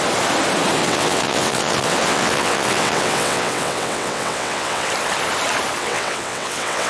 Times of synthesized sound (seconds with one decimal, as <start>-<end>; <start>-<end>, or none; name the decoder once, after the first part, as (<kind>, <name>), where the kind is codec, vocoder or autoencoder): 0.8-4.9 (vocoder, WaveNeXt); 5.8-6.9